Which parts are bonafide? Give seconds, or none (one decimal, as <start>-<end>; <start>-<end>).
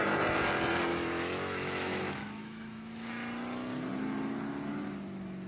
0.0-0.9; 3.1-5.5